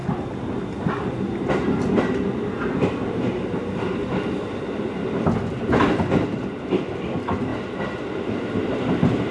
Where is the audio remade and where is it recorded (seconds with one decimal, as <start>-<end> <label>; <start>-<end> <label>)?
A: 0.0-9.3 recorded